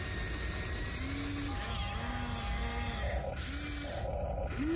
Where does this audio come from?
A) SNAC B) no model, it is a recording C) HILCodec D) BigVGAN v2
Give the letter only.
B